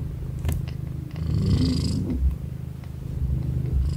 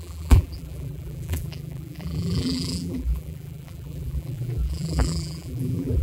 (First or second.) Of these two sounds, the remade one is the second